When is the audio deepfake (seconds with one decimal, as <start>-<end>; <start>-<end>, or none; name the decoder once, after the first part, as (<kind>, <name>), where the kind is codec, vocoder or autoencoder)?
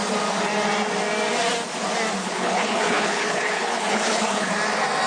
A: 2.2-4.5 (codec, HILCodec)